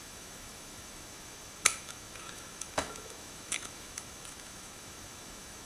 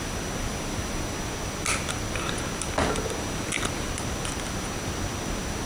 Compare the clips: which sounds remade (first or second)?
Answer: first